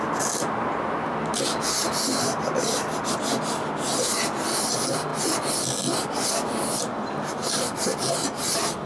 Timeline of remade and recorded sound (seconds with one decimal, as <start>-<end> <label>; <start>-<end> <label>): 0.0-8.9 recorded